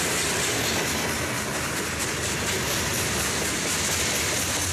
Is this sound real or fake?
real